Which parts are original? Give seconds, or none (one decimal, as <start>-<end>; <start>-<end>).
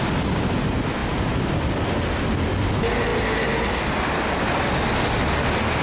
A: 0.0-5.8